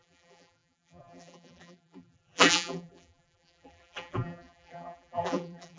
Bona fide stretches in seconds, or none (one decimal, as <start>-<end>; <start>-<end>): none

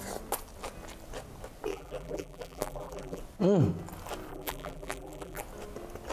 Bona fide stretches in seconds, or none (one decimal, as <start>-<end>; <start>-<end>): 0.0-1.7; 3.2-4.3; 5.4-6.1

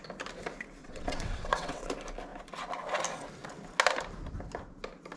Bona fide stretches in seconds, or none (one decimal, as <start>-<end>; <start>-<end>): 0.0-0.8; 1.9-5.2

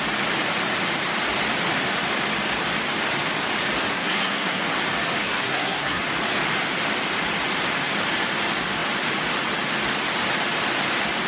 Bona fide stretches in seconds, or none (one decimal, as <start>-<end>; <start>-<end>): 0.0-3.9; 4.6-5.2; 6.0-11.3